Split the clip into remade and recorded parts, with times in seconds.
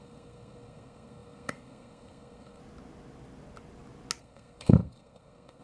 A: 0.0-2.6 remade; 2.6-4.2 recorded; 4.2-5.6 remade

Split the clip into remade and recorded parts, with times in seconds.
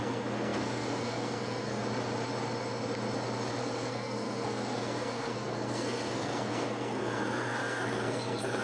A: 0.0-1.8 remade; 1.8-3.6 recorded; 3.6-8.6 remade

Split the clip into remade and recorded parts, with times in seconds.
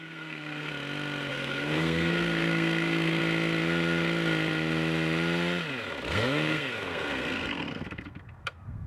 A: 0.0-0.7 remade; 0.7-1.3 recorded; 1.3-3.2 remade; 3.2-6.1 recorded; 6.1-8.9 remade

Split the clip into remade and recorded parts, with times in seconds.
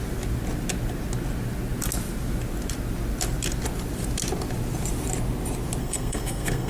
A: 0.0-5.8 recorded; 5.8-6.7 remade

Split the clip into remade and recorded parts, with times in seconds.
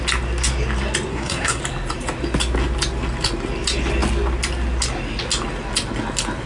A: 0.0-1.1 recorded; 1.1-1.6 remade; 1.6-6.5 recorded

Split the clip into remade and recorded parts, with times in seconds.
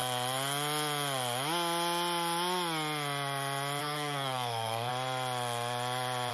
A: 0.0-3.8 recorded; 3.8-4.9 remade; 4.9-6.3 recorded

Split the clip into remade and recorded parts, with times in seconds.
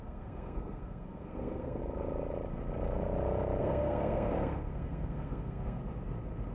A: 0.0-1.8 remade; 1.8-3.6 recorded; 3.6-5.8 remade; 5.8-6.5 recorded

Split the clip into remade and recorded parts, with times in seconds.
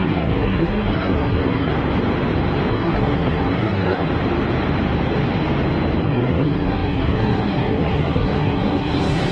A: 0.0-1.7 remade; 1.7-2.7 recorded; 2.7-4.1 remade; 4.1-6.0 recorded; 6.0-9.3 remade